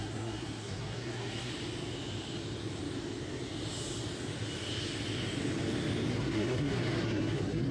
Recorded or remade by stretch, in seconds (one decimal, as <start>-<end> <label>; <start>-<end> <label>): 0.0-1.5 remade; 1.5-6.1 recorded; 6.1-7.7 remade